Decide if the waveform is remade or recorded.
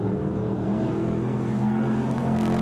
remade